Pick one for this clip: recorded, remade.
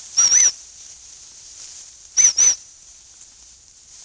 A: remade